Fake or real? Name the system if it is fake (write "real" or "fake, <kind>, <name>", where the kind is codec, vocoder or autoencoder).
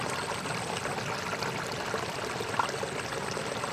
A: real